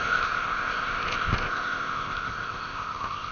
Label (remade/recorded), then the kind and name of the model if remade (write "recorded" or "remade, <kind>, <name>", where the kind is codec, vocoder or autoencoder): remade, codec, ZipCodec